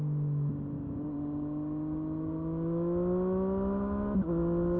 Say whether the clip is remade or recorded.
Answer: recorded